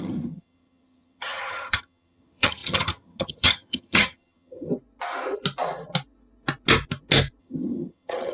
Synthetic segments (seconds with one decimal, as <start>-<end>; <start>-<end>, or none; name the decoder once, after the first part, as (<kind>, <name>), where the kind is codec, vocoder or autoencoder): 0.0-4.7 (vocoder, HiFi-GAN); 7.4-8.3